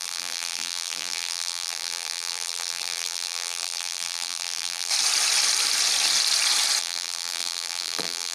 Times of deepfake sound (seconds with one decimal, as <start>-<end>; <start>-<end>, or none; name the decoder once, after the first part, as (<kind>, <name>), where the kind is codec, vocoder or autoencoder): 0.0-4.9 (vocoder, BigVGAN v2); 6.8-8.3